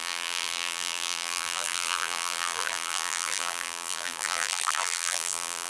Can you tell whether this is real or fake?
fake